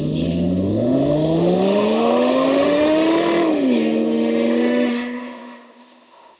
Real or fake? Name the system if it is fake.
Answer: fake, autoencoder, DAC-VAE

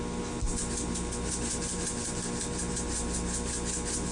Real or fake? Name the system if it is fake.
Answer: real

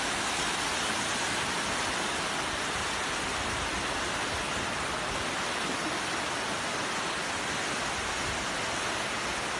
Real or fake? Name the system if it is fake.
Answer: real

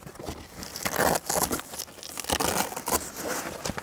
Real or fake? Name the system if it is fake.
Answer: real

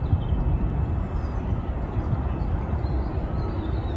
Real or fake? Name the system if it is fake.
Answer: real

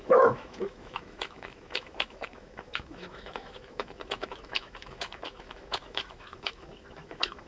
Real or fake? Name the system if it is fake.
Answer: fake, autoencoder, DAC-VAE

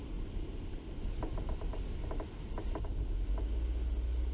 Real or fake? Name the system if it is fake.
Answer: real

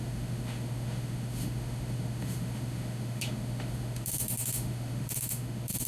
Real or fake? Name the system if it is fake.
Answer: fake, autoencoder, DAC-VAE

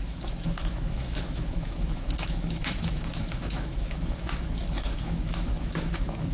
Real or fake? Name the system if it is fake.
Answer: fake, autoencoder, DAC-VAE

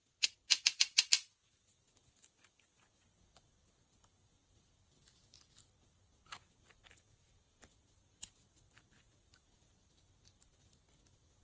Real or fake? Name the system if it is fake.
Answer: real